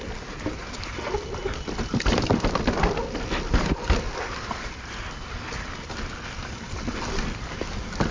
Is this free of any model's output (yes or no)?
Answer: yes